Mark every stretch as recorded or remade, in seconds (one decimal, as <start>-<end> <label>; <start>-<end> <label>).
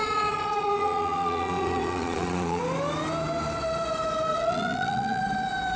0.0-2.6 remade; 2.6-4.3 recorded; 4.3-5.2 remade; 5.2-5.8 recorded